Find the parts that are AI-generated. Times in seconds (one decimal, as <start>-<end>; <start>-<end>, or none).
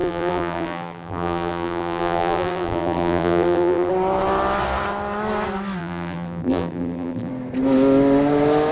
0.0-3.9; 5.8-7.3